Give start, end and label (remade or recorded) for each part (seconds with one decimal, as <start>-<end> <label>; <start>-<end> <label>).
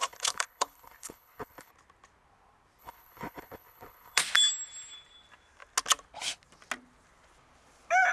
0.0-1.7 remade; 1.7-2.8 recorded; 2.8-4.2 remade; 4.2-8.1 recorded